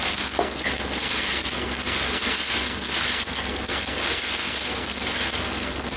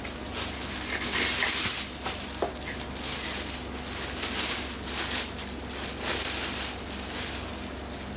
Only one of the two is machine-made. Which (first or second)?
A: first